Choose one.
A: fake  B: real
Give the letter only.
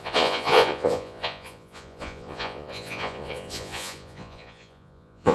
A